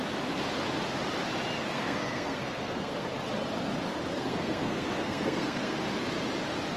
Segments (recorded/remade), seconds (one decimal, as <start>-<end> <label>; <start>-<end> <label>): 0.0-1.6 recorded; 1.6-3.1 remade; 3.1-4.1 recorded; 4.1-5.8 remade; 5.8-6.8 recorded